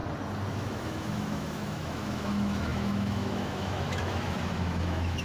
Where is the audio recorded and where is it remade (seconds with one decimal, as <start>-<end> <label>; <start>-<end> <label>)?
0.0-0.5 recorded; 0.5-5.2 remade